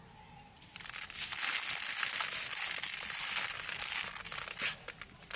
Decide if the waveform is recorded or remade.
recorded